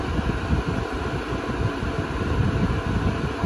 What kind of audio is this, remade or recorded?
recorded